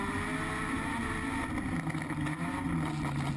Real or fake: real